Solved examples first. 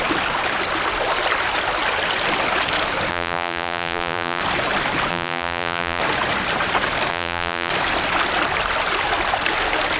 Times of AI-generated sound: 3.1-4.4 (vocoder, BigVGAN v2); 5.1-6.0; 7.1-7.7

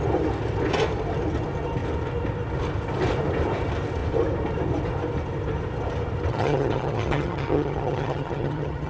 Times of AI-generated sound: 6.3-8.9 (vocoder, HiFi-GAN)

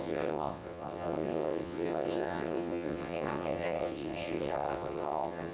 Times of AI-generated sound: 0.0-5.5 (vocoder, WaveNeXt)